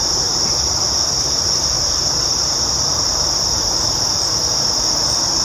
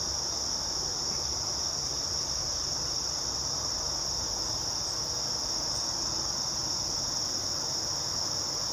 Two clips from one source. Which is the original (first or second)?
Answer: second